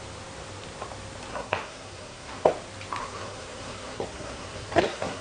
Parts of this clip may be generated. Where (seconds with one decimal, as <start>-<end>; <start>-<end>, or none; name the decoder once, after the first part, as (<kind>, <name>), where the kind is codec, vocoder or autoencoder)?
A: 1.3-2.5 (codec, SNAC); 3.0-5.2